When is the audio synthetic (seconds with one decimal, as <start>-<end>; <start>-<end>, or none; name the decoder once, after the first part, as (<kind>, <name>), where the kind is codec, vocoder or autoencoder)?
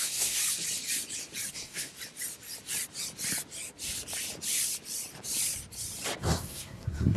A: 0.0-0.4 (codec, SNAC); 1.5-1.9; 6.2-7.2